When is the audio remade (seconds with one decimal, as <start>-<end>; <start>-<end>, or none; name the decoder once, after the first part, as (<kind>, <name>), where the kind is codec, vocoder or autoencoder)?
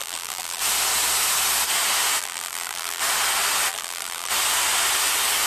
0.0-0.6 (vocoder, BigVGAN v2); 2.2-3.0; 3.7-4.3